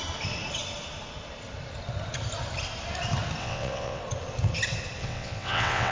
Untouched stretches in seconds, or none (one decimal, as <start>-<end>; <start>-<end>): 0.0-3.4; 4.0-5.0